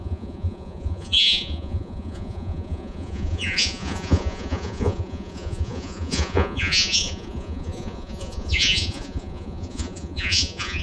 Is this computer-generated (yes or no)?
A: yes